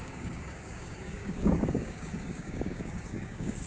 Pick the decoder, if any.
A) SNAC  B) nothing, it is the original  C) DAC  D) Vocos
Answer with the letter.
C